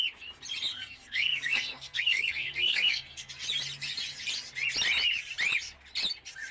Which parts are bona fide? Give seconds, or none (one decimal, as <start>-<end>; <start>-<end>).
0.0-0.7; 3.3-6.5